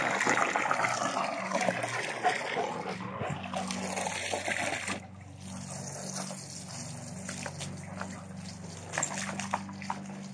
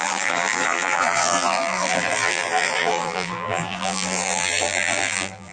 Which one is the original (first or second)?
first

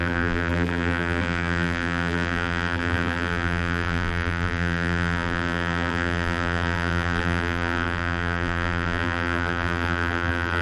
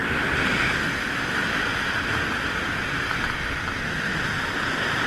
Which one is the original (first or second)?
second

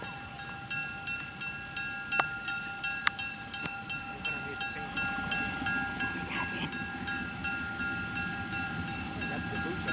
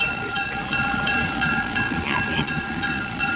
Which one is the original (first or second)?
first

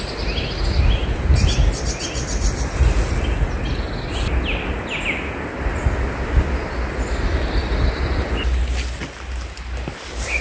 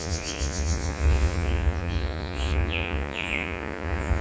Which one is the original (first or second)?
first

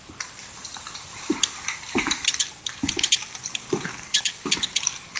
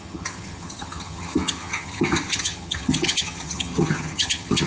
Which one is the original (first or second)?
first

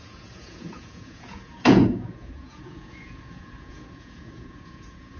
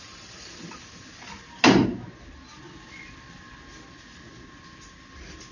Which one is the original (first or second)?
second